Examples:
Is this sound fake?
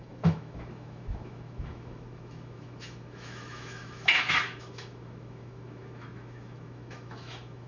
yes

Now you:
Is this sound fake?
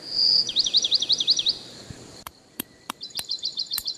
yes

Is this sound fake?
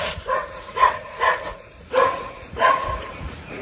yes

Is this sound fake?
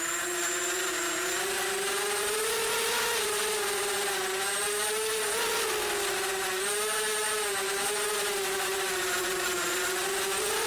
no